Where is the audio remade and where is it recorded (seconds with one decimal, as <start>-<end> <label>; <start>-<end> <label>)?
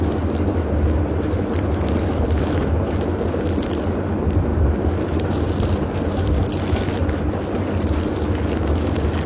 0.0-9.3 recorded